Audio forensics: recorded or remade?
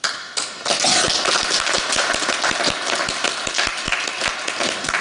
recorded